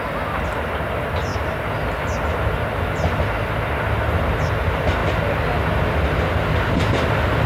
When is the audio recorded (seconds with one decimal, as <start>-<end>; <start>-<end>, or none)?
0.0-7.5